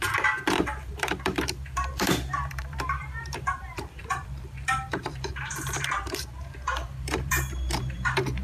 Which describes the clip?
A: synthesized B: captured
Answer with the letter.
A